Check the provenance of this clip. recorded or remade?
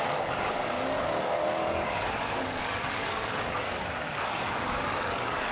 remade